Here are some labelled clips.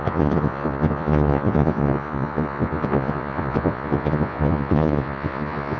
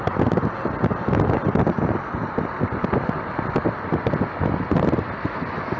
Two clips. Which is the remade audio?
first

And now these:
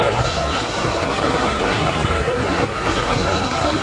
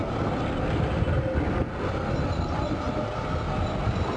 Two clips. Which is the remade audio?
first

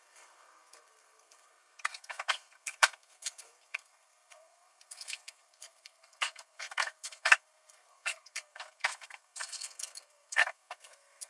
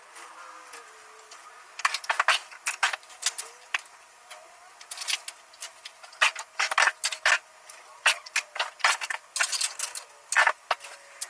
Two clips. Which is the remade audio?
first